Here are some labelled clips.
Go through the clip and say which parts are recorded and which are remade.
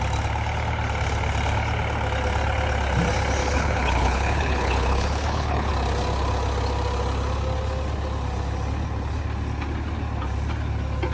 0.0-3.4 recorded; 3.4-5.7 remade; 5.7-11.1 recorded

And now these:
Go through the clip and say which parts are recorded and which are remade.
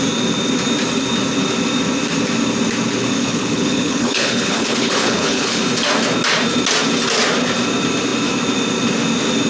0.0-3.2 recorded; 3.2-5.6 remade; 5.6-9.5 recorded